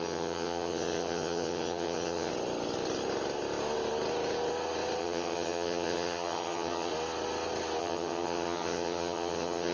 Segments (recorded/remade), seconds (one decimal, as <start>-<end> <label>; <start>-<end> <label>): 0.0-2.3 remade; 2.3-5.0 recorded; 5.0-6.9 remade; 6.9-7.8 recorded; 7.8-9.7 remade